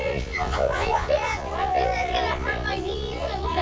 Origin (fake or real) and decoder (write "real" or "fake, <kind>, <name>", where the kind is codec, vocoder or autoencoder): fake, vocoder, Vocos